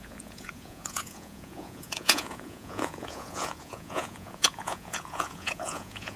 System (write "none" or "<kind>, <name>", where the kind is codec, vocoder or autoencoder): vocoder, Vocos